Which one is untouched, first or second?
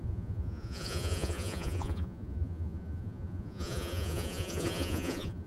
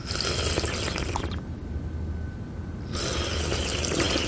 second